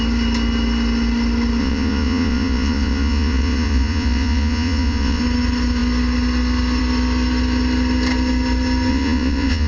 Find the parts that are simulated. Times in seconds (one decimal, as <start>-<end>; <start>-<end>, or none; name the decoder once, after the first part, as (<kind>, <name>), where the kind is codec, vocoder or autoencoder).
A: 1.6-5.2 (vocoder, Vocos); 8.9-9.7